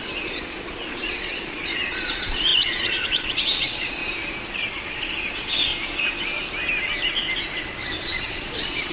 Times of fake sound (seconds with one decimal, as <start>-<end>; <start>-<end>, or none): 0.0-4.0; 4.6-5.7; 7.6-8.9